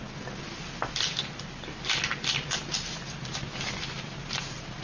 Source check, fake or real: real